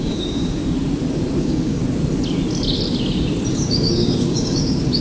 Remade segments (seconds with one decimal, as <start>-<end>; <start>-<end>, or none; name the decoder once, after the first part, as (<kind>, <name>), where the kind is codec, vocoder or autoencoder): 0.0-0.6 (codec, DAC); 1.4-1.8; 3.5-5.0